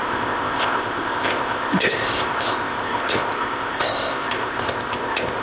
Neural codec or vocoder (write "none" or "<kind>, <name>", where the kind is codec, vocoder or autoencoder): codec, ZipCodec